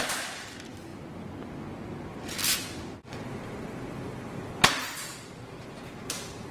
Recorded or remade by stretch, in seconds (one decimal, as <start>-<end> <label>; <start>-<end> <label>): 0.0-5.1 recorded; 5.1-6.5 remade